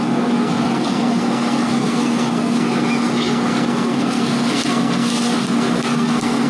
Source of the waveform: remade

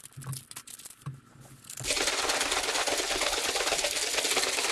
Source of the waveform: recorded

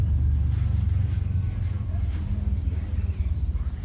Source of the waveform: recorded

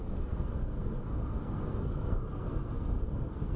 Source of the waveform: remade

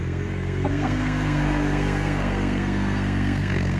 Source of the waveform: remade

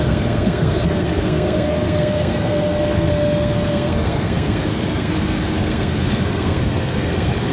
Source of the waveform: remade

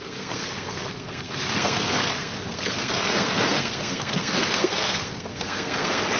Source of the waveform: remade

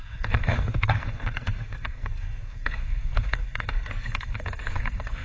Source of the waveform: remade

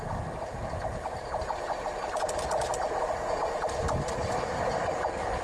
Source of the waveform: recorded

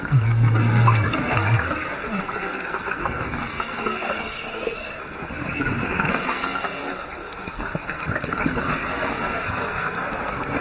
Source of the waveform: remade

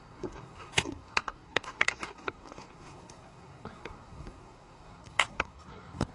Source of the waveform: remade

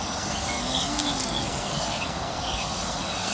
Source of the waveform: remade